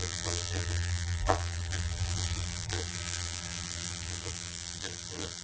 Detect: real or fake fake